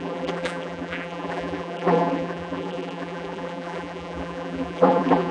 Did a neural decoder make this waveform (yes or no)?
yes